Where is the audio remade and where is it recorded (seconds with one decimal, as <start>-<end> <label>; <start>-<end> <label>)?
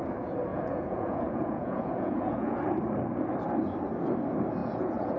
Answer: 0.0-0.5 recorded; 0.5-2.6 remade; 2.6-4.6 recorded; 4.6-5.2 remade